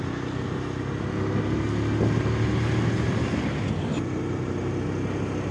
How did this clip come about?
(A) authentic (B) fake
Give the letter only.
A